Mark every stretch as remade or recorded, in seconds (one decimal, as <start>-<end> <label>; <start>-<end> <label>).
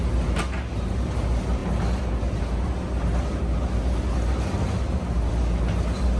0.0-6.2 recorded